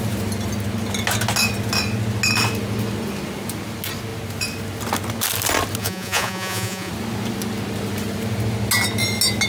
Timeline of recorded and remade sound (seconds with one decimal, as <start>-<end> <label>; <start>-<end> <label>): 0.0-5.8 recorded; 5.8-6.9 remade; 6.9-9.5 recorded